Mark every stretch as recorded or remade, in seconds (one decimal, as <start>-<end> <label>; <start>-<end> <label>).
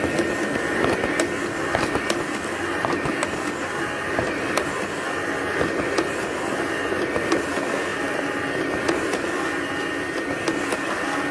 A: 0.0-11.3 recorded